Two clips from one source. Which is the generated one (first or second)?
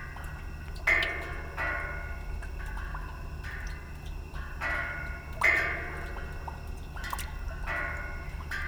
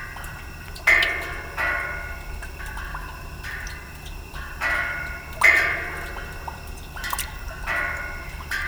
second